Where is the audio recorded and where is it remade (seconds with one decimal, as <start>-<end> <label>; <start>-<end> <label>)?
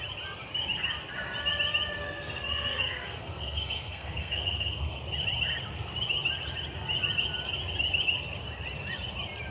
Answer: 0.0-2.0 recorded; 2.0-5.0 remade; 5.0-9.5 recorded